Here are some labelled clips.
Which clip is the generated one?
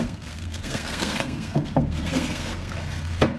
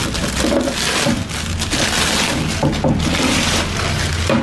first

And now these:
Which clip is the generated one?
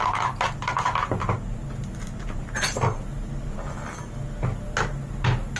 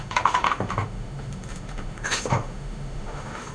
second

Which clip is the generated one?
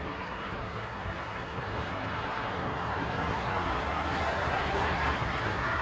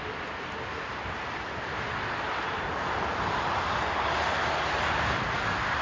first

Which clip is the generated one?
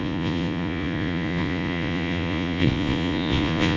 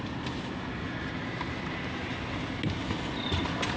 first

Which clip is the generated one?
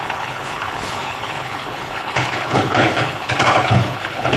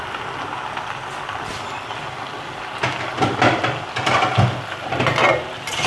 first